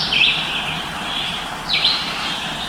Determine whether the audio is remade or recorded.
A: recorded